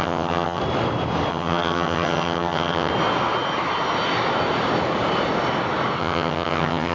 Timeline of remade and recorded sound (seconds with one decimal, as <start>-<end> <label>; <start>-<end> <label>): 0.0-0.6 remade; 0.6-1.3 recorded; 1.3-2.9 remade; 2.9-6.0 recorded; 6.0-6.9 remade